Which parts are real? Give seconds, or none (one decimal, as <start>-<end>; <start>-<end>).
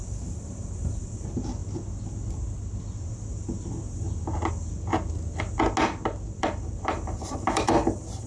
1.6-4.5; 4.9-6.3